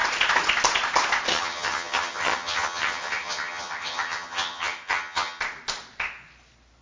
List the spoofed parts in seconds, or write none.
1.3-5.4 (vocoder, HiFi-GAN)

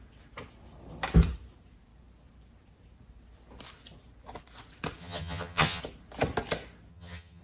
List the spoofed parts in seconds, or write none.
5.0-5.8 (vocoder, HiFi-GAN); 6.9-7.4